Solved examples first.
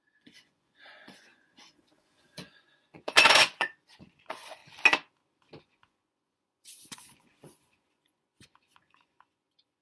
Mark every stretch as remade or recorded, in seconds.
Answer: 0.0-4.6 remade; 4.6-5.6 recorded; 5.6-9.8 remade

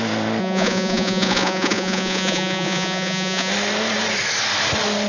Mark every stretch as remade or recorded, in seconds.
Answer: 0.0-0.4 recorded; 0.4-3.5 remade; 3.5-5.1 recorded

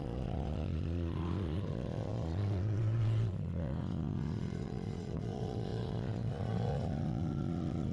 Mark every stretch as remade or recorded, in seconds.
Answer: 0.0-7.9 remade